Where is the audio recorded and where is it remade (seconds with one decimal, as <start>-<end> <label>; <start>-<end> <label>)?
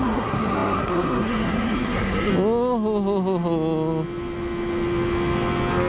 0.0-2.3 remade; 2.3-5.9 recorded